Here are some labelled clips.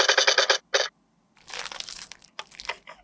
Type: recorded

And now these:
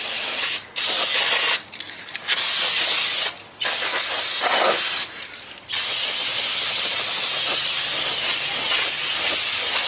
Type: recorded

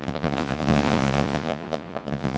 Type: remade